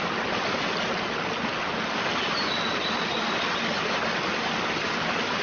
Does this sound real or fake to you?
real